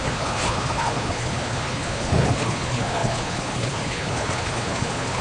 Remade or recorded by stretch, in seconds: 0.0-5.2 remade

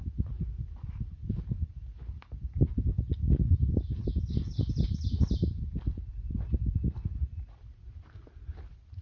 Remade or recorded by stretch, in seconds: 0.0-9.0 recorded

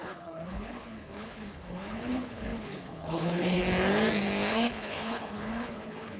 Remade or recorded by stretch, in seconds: 0.0-3.6 remade; 3.6-4.5 recorded; 4.5-6.2 remade